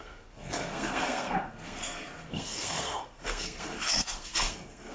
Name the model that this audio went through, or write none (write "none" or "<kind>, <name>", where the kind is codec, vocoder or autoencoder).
codec, SNAC